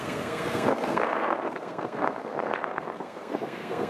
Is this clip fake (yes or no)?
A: yes